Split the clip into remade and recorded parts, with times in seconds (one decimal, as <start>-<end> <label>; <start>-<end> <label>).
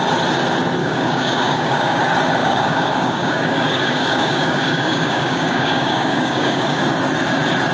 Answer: 0.0-0.8 recorded; 0.8-2.0 remade; 2.0-2.4 recorded; 2.4-6.8 remade; 6.8-7.7 recorded